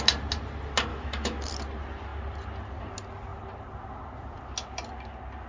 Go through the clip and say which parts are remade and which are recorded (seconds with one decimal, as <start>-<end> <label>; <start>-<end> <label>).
0.0-0.9 recorded; 0.9-1.5 remade; 1.5-5.5 recorded

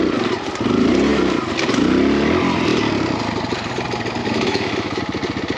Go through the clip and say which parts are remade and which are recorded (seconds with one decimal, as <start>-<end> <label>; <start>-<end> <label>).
0.0-4.2 recorded; 4.2-5.0 remade; 5.0-5.6 recorded

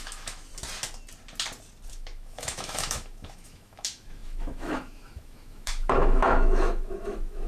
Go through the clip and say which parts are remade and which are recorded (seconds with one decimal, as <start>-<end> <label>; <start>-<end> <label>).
0.0-0.5 remade; 0.5-1.9 recorded; 1.9-7.5 remade

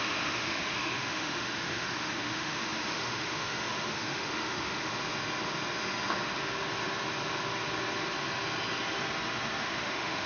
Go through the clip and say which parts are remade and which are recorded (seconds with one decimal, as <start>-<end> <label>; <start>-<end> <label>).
0.0-4.9 remade; 4.9-9.6 recorded; 9.6-10.3 remade

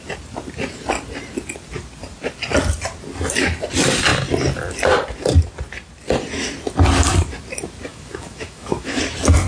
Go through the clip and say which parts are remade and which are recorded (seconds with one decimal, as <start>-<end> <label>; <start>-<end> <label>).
0.0-7.9 recorded; 7.9-9.0 remade; 9.0-9.5 recorded

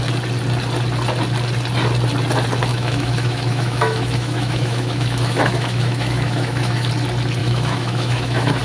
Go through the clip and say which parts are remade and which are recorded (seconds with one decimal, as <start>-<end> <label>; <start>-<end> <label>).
0.0-2.7 recorded; 2.7-6.9 remade; 6.9-7.4 recorded; 7.4-8.6 remade

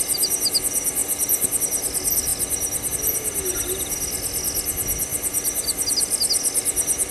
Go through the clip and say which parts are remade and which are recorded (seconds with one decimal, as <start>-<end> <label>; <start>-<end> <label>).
0.0-7.1 recorded

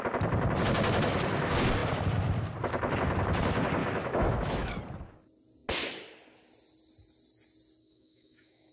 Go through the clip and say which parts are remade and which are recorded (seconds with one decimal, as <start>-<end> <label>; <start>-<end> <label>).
0.0-3.8 recorded; 3.8-4.7 remade; 4.7-7.8 recorded; 7.8-8.7 remade